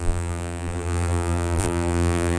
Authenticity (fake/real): fake